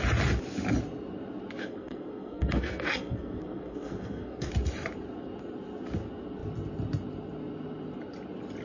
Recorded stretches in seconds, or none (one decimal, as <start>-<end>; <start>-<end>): 0.0-1.6; 4.5-8.6